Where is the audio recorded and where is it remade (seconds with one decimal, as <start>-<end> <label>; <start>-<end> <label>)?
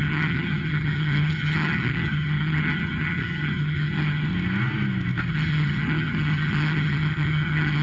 0.0-4.3 remade; 4.3-5.3 recorded; 5.3-7.8 remade